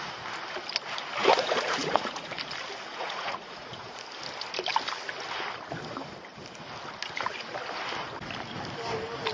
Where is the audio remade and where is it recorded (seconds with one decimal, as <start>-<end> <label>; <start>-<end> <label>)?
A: 0.0-1.2 recorded; 1.2-2.4 remade; 2.4-2.9 recorded; 2.9-4.0 remade; 4.0-9.3 recorded